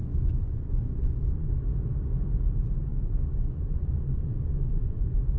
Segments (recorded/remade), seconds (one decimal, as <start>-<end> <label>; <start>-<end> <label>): 0.0-1.6 remade; 1.6-2.9 recorded; 2.9-5.4 remade